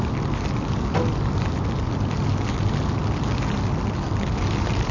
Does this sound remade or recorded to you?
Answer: recorded